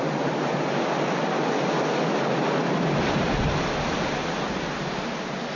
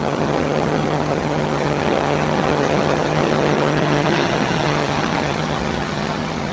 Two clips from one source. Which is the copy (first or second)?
second